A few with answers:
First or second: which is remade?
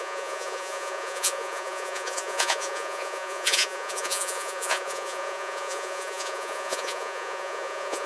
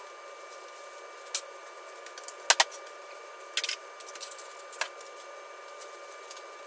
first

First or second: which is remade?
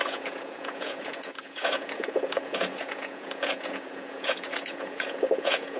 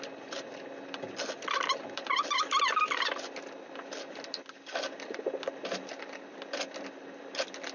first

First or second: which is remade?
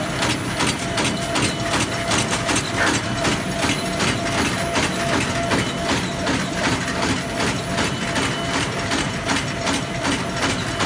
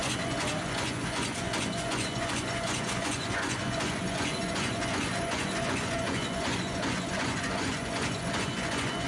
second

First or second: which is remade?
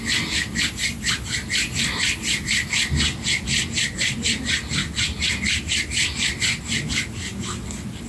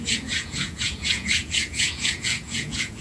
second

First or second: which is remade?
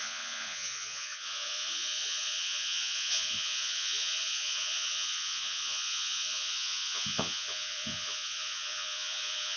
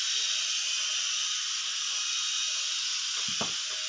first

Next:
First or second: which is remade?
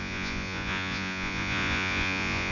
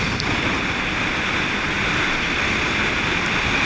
first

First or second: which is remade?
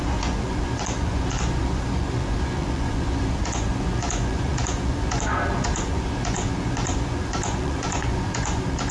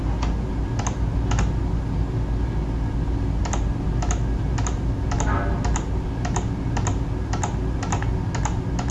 first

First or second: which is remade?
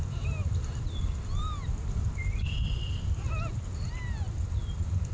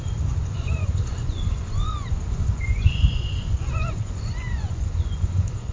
second